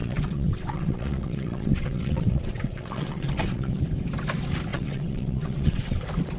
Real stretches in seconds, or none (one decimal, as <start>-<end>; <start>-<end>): 3.8-4.7; 6.0-6.4

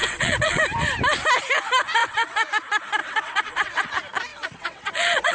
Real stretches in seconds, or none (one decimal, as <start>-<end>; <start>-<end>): 0.6-2.0; 2.5-3.0; 3.9-4.3

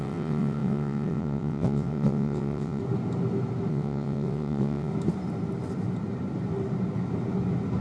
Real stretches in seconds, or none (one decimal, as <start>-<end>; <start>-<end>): 2.8-3.7; 4.9-7.8